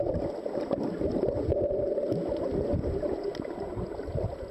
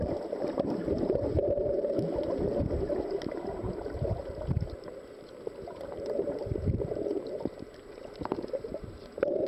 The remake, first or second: second